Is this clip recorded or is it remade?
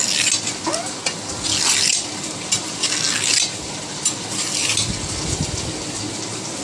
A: recorded